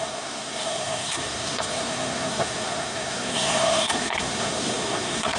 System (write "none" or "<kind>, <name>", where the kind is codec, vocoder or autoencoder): codec, SNAC